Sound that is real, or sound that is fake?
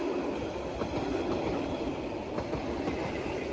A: real